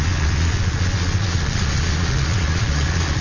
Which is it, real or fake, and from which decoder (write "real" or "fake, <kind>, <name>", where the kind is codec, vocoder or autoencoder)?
fake, vocoder, Vocos